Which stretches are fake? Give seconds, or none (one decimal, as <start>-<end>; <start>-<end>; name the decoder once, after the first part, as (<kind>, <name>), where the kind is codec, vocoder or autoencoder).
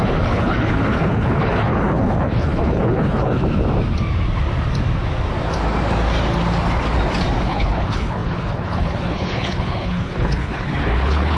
0.0-3.4 (codec, HILCodec); 7.4-11.4